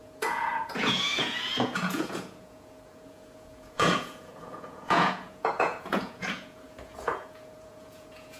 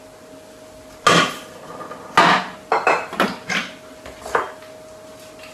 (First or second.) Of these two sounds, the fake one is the first